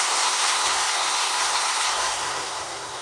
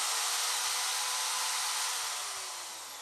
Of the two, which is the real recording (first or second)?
second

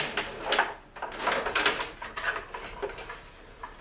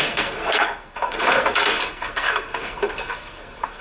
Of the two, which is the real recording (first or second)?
first